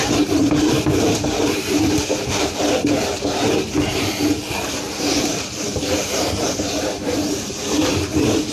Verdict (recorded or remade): remade